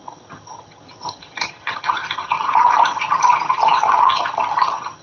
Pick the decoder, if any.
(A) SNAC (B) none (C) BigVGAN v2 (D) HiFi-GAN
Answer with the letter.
D